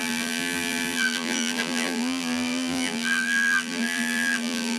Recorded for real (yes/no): no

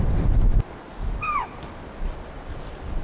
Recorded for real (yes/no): no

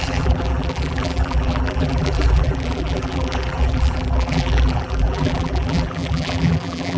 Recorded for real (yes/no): no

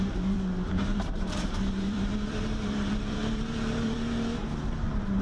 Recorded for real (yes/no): no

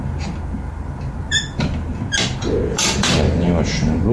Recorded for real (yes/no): no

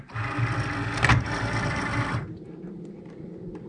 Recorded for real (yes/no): no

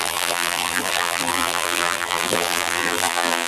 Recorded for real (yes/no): no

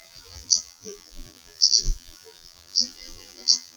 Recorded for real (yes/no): no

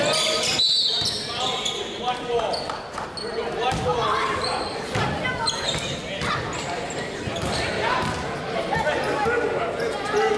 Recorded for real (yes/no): yes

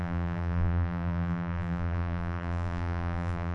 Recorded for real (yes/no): no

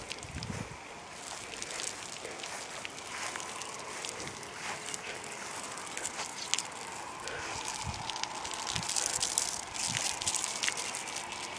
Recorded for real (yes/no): yes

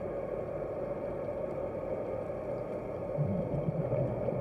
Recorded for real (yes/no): yes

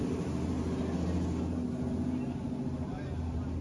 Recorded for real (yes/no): yes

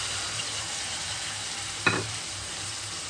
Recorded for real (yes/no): no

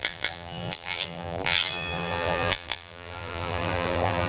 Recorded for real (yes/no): no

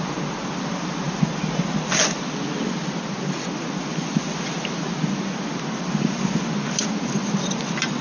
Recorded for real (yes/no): yes